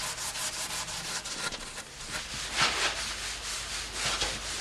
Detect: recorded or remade recorded